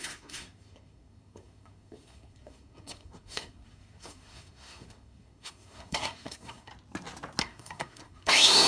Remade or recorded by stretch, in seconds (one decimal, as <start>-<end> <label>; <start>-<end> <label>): 0.0-6.7 remade; 6.7-7.4 recorded; 7.4-8.7 remade